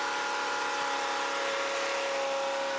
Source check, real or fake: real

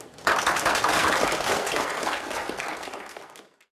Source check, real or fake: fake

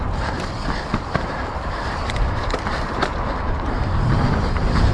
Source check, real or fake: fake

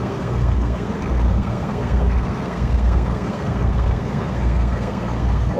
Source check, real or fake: fake